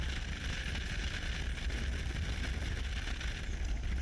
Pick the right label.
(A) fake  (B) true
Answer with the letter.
B